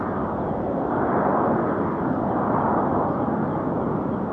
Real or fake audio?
real